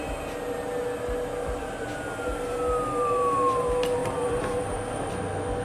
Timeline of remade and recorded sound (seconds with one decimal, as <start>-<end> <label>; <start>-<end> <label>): 0.0-4.0 recorded; 4.0-5.1 remade; 5.1-5.6 recorded